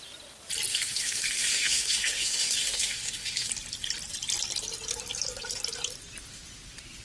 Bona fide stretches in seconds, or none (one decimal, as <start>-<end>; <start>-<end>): 0.0-0.7; 3.5-7.0